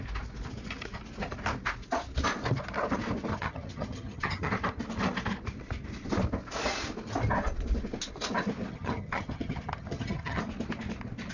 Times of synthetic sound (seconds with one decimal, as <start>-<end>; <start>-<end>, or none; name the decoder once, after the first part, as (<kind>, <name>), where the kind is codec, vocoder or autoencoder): 3.3-4.5 (vocoder, HiFi-GAN); 8.7-10.4